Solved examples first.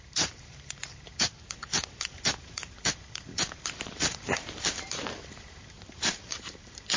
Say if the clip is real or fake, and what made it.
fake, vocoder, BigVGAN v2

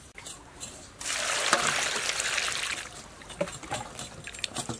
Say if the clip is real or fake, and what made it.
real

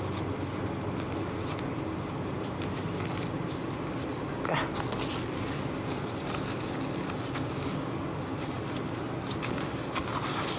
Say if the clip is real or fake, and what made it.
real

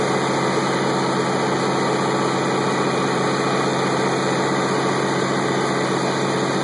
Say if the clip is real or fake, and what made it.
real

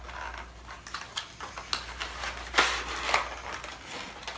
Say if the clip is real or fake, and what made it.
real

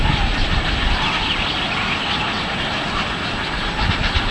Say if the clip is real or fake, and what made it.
real